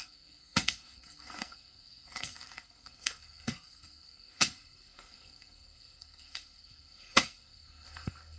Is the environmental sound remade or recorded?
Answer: remade